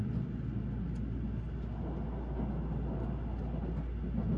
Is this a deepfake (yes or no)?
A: no